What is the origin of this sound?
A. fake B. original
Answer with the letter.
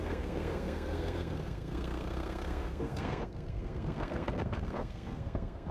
A